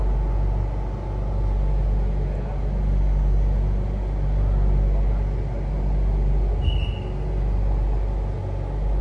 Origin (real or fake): real